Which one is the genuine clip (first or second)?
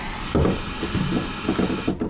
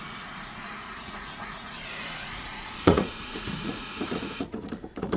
first